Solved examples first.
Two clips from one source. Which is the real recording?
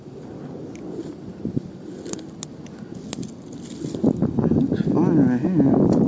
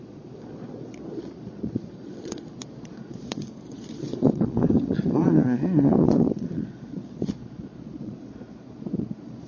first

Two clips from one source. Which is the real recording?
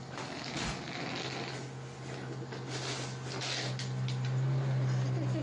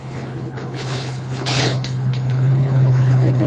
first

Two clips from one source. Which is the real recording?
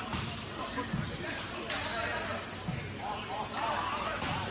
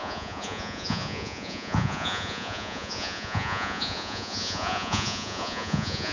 first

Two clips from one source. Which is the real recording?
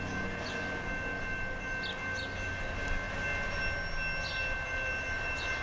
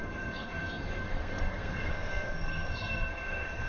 first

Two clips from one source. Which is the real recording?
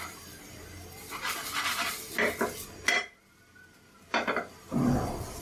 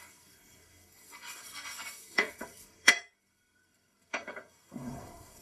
first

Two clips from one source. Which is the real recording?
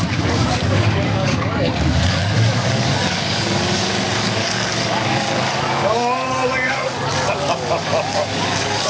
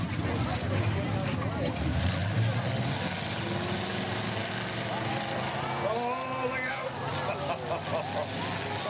second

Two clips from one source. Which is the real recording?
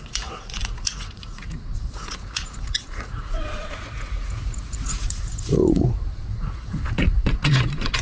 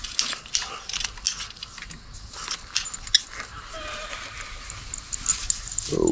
second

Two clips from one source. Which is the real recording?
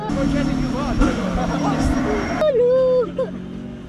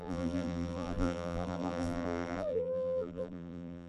first